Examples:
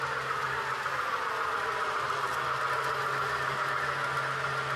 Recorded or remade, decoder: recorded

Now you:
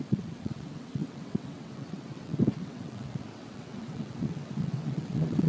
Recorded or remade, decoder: remade, vocoder, WaveNeXt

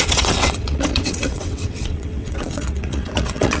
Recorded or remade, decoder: remade, vocoder, WaveNeXt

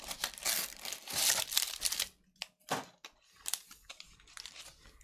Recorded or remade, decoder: recorded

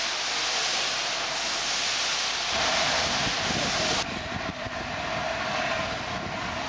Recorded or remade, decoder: recorded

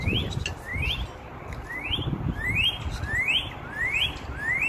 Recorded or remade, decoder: recorded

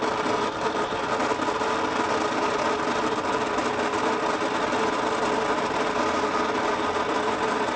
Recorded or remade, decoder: recorded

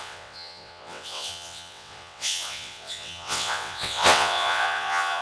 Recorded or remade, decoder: remade, vocoder, WaveNeXt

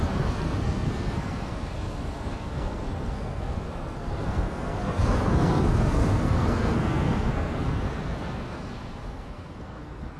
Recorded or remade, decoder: remade, codec, SNAC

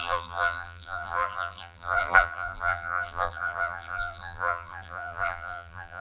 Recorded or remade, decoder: remade, vocoder, BigVGAN v2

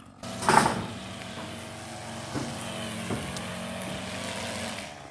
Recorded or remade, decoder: recorded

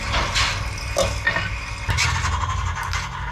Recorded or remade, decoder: recorded